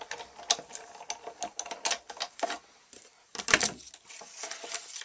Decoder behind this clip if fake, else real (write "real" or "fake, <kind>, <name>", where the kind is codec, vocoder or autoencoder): real